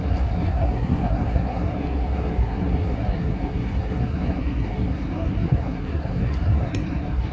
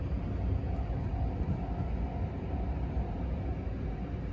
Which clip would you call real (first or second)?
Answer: second